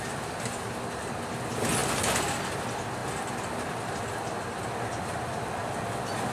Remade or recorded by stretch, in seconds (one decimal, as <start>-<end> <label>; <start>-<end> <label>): 0.0-6.3 recorded